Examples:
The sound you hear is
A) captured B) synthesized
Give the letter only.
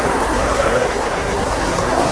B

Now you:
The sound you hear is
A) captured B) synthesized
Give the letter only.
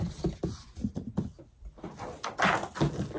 A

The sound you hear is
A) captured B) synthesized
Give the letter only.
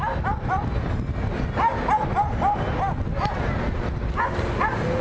A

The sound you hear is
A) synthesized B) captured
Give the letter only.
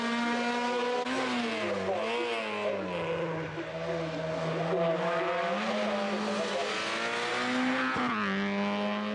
B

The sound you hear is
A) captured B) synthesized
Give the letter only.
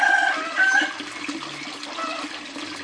A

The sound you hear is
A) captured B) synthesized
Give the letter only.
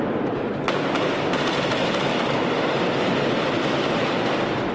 A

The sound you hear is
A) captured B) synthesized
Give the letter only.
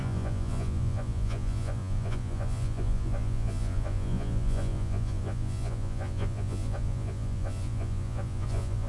B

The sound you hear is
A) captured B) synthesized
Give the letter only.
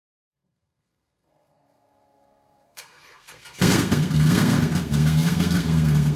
B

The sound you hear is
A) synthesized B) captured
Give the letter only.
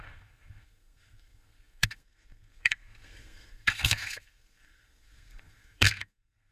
A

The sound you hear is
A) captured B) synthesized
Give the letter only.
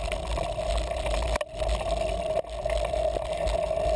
A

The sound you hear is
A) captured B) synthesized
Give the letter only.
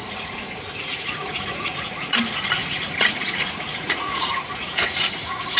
B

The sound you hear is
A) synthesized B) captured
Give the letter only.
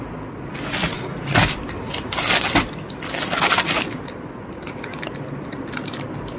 B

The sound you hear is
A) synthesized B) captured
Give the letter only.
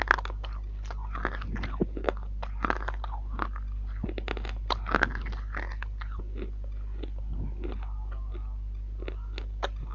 B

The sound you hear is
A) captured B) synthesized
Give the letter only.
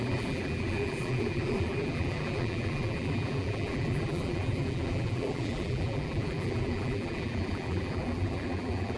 B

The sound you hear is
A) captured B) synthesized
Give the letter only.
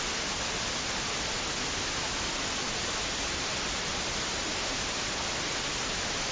A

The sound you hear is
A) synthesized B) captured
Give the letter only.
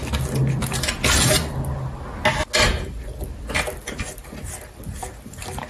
B